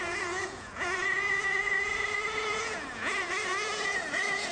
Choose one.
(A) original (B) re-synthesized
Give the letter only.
B